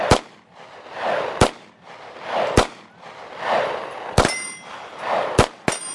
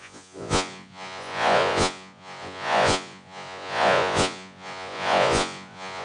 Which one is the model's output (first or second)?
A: second